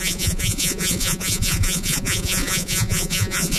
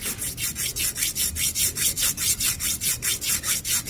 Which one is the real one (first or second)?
second